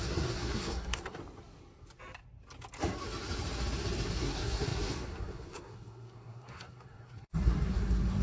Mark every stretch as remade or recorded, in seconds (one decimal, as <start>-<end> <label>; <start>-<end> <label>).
0.0-1.2 remade; 1.2-4.1 recorded; 4.1-8.2 remade